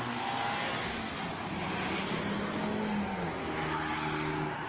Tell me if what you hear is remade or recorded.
recorded